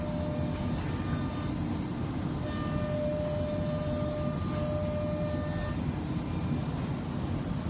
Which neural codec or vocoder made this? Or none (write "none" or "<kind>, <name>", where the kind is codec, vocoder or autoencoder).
none